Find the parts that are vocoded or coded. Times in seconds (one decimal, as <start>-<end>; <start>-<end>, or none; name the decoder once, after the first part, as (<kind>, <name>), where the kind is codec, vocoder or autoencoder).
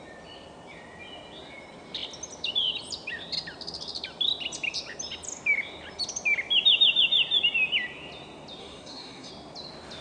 8.6-9.3 (codec, SNAC)